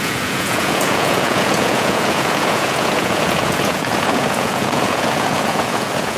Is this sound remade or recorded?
remade